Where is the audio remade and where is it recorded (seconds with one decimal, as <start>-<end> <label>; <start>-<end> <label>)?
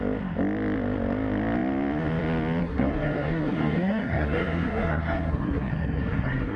0.0-2.6 recorded; 2.6-6.6 remade